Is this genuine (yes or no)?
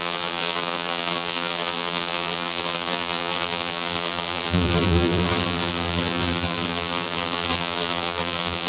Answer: no